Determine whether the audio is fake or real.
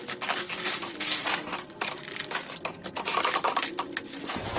real